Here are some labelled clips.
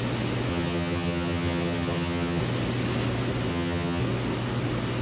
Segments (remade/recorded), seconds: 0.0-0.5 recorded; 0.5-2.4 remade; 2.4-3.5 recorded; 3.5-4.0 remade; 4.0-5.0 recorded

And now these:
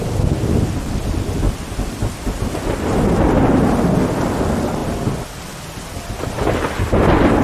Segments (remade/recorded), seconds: 0.0-7.4 recorded

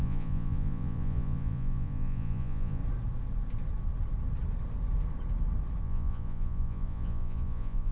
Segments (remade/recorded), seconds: 0.0-2.8 remade; 2.8-5.8 recorded; 5.8-7.9 remade

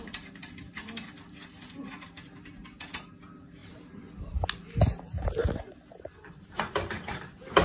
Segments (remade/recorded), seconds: 0.0-7.6 recorded

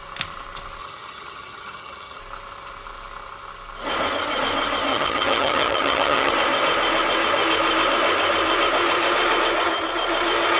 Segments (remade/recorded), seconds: 0.0-0.8 recorded; 0.8-2.2 remade; 2.2-4.9 recorded; 4.9-6.3 remade; 6.3-10.6 recorded

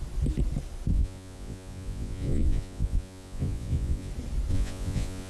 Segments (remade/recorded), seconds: 0.0-0.9 recorded; 0.9-4.1 remade; 4.1-4.5 recorded; 4.5-5.3 remade